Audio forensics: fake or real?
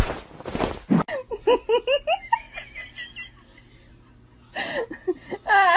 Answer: real